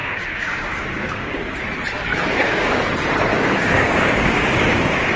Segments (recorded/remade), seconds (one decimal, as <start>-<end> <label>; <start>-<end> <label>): 0.0-1.6 remade; 1.6-2.1 recorded; 2.1-2.8 remade; 2.8-3.3 recorded; 3.3-5.2 remade